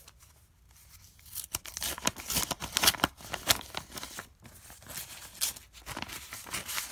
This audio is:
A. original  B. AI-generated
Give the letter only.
A